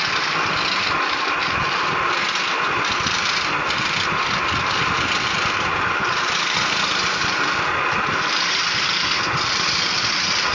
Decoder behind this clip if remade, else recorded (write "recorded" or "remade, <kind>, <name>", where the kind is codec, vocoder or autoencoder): recorded